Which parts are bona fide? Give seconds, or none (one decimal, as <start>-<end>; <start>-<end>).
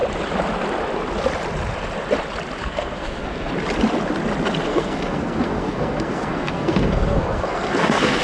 0.0-2.6; 3.5-4.7